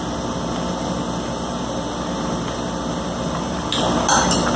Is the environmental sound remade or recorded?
recorded